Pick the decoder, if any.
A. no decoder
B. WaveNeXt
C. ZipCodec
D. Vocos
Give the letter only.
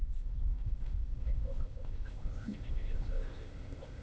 C